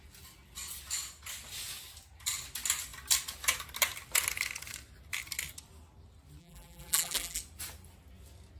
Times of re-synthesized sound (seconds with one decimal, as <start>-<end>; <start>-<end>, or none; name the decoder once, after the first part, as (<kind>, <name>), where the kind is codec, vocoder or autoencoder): 6.4-7.4 (vocoder, BigVGAN v2)